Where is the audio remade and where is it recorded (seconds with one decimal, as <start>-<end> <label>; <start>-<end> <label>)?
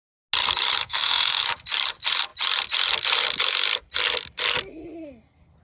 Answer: 0.0-0.8 recorded; 0.8-1.4 remade; 1.4-5.6 recorded